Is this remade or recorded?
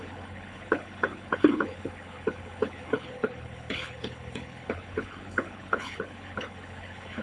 remade